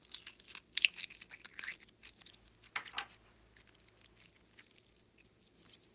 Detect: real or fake real